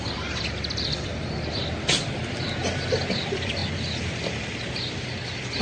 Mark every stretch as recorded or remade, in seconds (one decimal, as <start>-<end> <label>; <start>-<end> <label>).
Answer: 0.0-1.1 remade; 1.1-2.0 recorded; 2.0-2.6 remade; 2.6-3.2 recorded; 3.2-3.6 remade; 3.6-4.4 recorded; 4.4-5.6 remade